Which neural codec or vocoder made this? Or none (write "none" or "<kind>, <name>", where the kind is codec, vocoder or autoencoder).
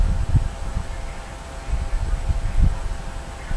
none